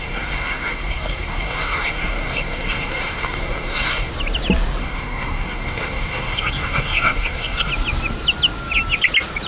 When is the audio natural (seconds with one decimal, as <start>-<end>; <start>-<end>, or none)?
4.1-4.8; 7.7-9.5